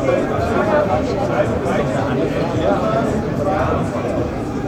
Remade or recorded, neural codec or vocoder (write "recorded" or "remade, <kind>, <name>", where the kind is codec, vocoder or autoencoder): recorded